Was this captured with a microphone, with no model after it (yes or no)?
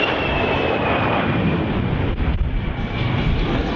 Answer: yes